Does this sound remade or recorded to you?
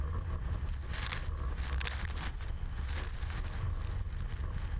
recorded